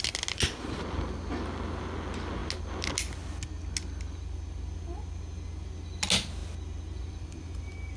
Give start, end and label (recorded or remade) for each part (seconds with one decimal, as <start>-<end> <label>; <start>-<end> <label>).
0.0-8.0 recorded